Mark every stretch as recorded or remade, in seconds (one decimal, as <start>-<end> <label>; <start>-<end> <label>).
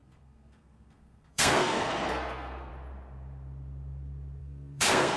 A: 0.0-2.7 remade; 2.7-4.4 recorded; 4.4-5.2 remade